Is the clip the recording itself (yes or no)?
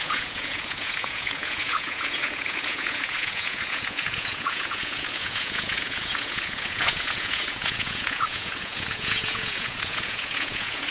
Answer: no